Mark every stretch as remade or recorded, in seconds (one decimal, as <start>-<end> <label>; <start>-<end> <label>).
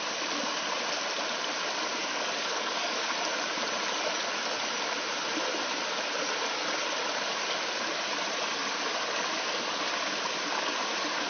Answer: 0.0-2.0 recorded; 2.0-3.1 remade; 3.1-8.6 recorded; 8.6-9.8 remade; 9.8-11.3 recorded